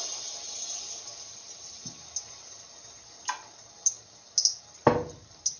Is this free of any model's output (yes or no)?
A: yes